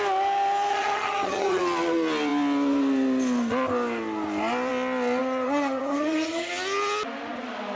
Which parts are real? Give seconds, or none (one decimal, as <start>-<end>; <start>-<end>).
0.0-0.7; 1.6-5.2; 6.5-7.8